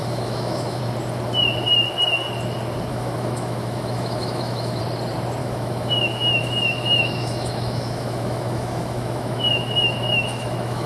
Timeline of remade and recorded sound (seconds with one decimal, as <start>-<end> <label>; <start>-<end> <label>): 0.0-0.8 remade; 0.8-2.9 recorded; 2.9-4.8 remade; 4.8-5.4 recorded; 5.4-10.9 remade